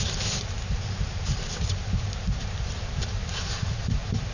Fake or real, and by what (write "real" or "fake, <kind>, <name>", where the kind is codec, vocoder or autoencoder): fake, vocoder, BigVGAN v2